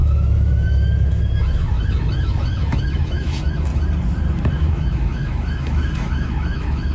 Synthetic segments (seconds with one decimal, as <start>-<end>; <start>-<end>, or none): 0.0-3.7; 4.6-6.9